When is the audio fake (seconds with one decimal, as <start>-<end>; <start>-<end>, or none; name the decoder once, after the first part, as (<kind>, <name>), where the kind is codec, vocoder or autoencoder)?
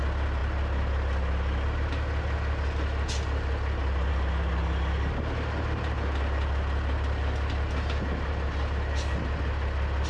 none